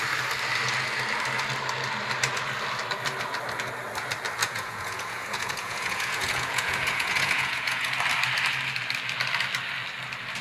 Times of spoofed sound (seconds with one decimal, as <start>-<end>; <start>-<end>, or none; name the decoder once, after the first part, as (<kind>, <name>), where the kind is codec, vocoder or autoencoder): 4.4-7.9 (vocoder, Vocos)